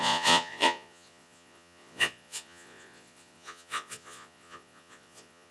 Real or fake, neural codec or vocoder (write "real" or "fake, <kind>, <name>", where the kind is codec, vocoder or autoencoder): fake, vocoder, Vocos